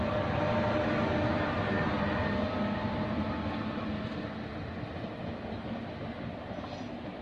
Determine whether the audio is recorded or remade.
recorded